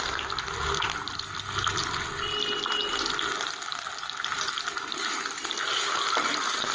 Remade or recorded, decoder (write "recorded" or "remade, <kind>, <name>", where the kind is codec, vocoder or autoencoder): recorded